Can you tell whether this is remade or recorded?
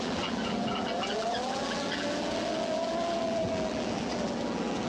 remade